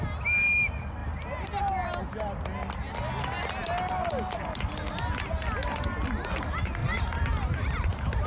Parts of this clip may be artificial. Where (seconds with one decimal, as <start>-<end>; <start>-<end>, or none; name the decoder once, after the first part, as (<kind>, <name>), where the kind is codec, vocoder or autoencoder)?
6.8-8.3 (vocoder, BigVGAN v2)